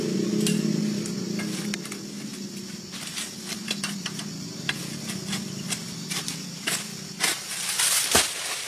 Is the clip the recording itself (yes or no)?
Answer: yes